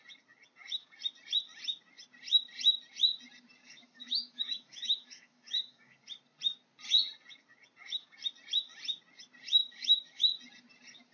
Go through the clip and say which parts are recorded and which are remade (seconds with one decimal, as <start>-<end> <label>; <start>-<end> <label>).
0.0-3.6 recorded; 3.6-6.0 remade; 6.0-9.6 recorded; 9.6-10.2 remade; 10.2-11.1 recorded